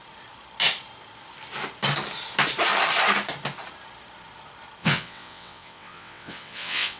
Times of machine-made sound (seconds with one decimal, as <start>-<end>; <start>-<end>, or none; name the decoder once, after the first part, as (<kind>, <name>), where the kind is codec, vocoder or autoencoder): 4.8-7.0 (vocoder, WaveNeXt)